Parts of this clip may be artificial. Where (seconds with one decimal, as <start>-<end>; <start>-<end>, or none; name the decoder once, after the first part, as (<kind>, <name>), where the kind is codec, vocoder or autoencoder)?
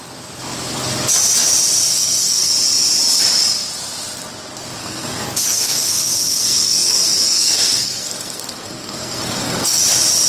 1.9-2.5 (codec, SNAC); 4.8-9.8